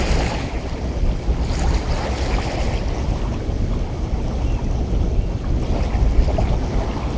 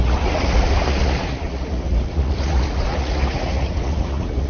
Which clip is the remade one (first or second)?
second